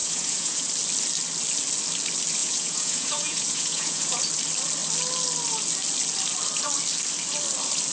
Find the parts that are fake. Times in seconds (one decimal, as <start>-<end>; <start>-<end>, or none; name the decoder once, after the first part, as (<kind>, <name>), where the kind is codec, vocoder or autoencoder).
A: 0.0-0.7 (vocoder, Vocos); 2.4-4.2